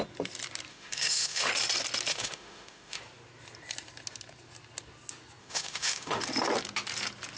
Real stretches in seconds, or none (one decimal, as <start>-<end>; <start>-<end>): 0.0-0.7; 1.5-2.1; 3.0-5.4; 6.2-7.4